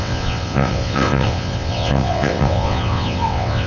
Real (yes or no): no